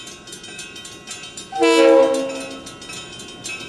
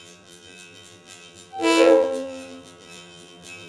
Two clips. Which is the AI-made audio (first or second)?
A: second